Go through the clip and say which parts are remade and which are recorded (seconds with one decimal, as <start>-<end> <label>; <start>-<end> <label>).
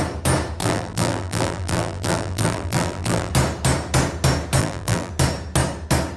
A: 0.0-0.6 recorded; 0.6-3.3 remade; 3.3-4.6 recorded; 4.6-5.1 remade; 5.1-6.2 recorded